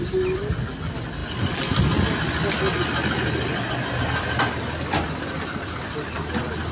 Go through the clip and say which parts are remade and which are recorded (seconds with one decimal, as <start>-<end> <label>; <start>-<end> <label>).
0.0-6.7 recorded